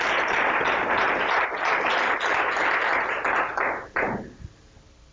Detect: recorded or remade recorded